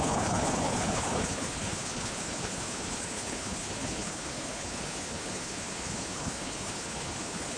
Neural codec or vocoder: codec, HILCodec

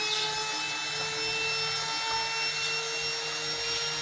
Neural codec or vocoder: none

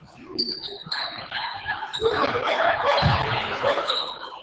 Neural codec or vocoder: codec, HILCodec